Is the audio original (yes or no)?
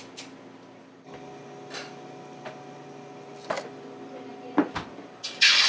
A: yes